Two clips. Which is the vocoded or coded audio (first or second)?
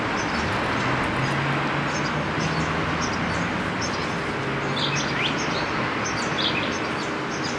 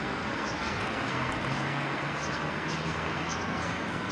second